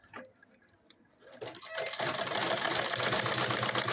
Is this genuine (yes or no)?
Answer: yes